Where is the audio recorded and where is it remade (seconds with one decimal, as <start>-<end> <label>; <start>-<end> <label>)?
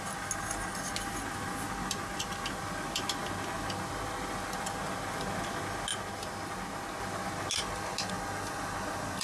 0.0-9.2 recorded